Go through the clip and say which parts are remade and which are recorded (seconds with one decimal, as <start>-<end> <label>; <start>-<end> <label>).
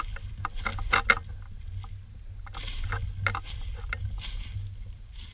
0.0-5.3 recorded